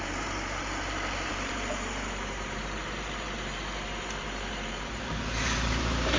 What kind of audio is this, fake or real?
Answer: fake